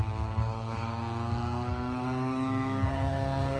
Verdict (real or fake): fake